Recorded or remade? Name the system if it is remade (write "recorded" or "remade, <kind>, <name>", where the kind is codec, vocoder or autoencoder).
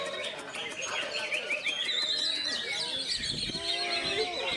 recorded